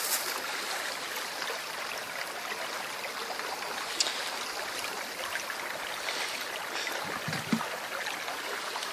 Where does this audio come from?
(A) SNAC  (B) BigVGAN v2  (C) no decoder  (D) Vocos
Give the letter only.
C